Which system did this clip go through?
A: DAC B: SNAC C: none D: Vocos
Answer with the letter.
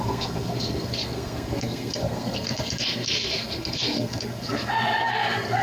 B